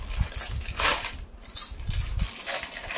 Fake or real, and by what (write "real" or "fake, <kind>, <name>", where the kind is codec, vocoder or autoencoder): real